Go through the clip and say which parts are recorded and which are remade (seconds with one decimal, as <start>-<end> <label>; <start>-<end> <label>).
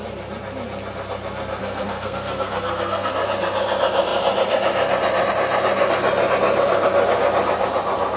0.0-1.6 recorded; 1.6-3.1 remade; 3.1-8.2 recorded